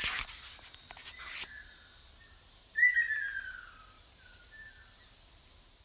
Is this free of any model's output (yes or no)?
yes